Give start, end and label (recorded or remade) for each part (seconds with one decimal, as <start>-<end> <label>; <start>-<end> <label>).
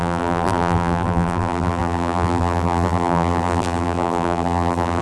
0.0-5.0 remade